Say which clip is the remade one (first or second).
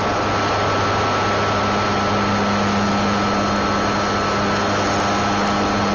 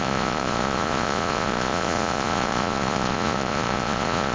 second